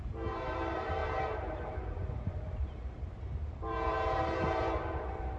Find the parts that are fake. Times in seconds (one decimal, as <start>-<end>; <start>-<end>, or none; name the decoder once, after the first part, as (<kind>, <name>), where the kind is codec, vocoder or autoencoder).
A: 0.0-5.4 (vocoder, BigVGAN v2)